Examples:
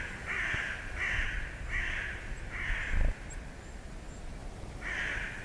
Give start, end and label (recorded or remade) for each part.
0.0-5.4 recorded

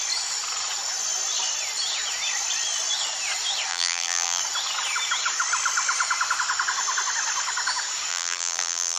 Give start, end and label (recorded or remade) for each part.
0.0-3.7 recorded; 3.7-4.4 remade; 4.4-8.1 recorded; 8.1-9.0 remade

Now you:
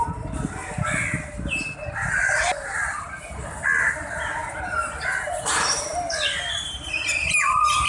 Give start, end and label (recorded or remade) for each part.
0.0-5.9 recorded; 5.9-6.9 remade; 6.9-7.9 recorded

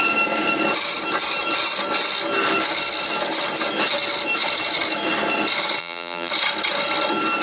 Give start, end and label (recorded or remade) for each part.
0.0-5.8 recorded; 5.8-6.3 remade; 6.3-7.4 recorded